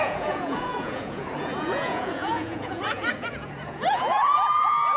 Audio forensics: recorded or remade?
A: remade